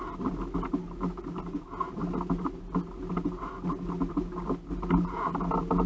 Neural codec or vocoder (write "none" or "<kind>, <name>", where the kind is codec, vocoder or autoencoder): none